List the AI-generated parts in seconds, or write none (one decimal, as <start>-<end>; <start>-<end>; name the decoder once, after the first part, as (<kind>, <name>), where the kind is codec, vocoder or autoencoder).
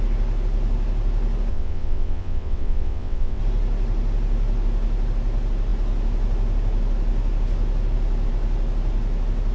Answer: 1.5-3.4 (vocoder, WaveNeXt)